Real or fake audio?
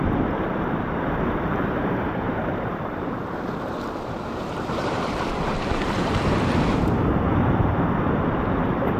fake